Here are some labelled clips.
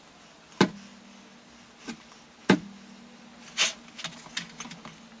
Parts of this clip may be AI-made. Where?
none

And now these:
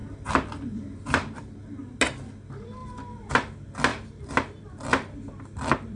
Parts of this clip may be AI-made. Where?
0.0-1.8 (vocoder, BigVGAN v2); 3.9-4.7

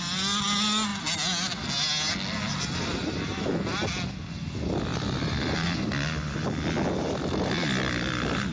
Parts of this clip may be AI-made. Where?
4.9-5.7 (vocoder, BigVGAN v2)

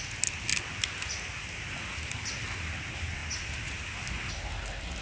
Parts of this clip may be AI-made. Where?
none

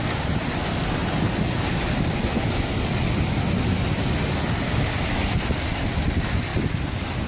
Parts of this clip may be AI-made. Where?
none

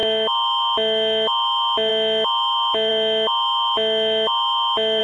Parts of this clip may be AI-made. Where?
none